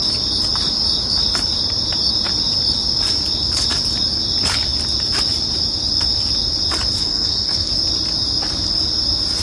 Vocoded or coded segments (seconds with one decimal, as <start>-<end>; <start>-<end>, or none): 7.0-7.7